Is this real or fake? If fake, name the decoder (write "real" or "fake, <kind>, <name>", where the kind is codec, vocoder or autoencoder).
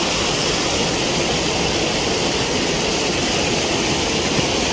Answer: real